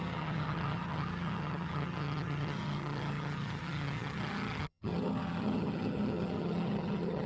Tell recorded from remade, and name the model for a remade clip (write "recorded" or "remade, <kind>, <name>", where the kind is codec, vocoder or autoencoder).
remade, vocoder, HiFi-GAN